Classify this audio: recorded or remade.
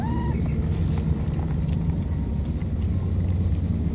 recorded